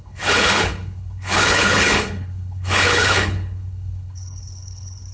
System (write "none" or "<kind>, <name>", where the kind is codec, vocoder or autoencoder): codec, HILCodec